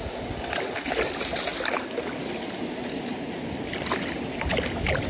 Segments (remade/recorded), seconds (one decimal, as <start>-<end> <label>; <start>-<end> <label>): 0.0-5.1 recorded